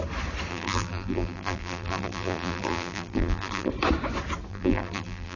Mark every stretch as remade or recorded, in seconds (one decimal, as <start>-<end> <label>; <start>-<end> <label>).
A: 0.0-0.5 recorded; 0.5-3.7 remade; 3.7-4.5 recorded; 4.5-5.4 remade